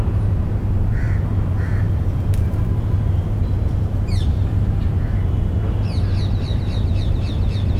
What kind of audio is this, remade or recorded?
remade